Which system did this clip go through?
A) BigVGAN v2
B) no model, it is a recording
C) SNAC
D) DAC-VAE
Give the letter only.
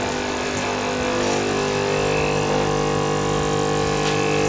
B